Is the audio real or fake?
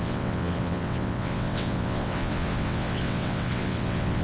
fake